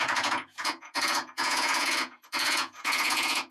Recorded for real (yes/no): no